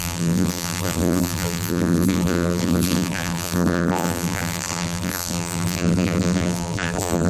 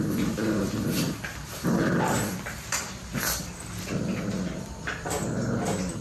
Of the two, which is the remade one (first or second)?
first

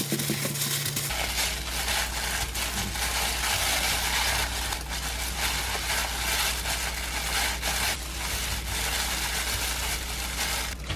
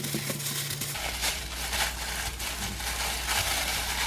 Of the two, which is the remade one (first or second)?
second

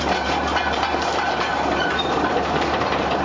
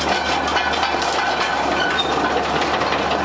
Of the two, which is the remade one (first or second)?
first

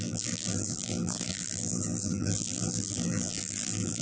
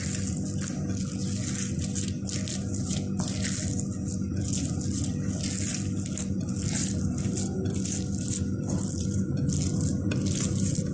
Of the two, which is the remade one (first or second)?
first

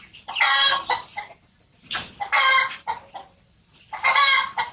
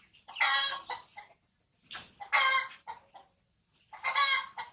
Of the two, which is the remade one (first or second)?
first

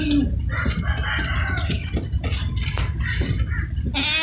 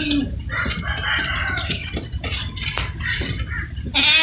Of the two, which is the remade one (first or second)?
second